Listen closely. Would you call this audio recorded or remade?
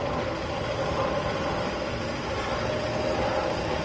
recorded